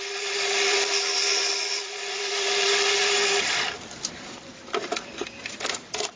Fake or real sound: fake